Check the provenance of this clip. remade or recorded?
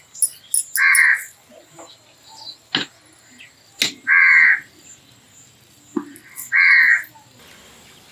recorded